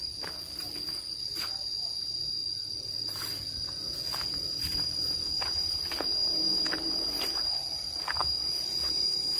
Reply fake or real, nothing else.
real